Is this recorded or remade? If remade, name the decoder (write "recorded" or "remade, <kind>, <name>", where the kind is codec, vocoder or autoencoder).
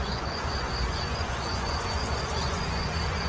remade, vocoder, Vocos